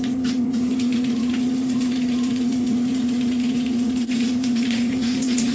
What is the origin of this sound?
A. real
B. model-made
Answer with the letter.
B